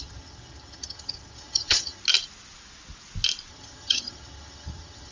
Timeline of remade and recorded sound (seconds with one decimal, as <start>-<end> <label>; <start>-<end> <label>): 0.0-2.0 remade; 2.0-3.5 recorded; 3.5-5.1 remade